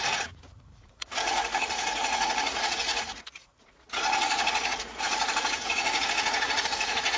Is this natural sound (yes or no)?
no